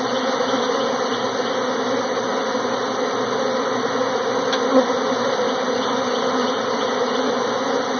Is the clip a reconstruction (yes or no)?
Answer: no